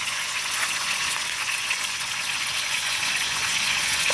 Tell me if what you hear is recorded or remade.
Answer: remade